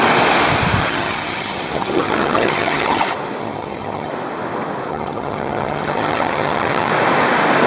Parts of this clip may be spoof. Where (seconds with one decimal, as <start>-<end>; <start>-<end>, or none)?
0.8-3.0; 3.4-4.1; 4.9-6.9